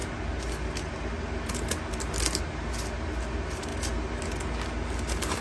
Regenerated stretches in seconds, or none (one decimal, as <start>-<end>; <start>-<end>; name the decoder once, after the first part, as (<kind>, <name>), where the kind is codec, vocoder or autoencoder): none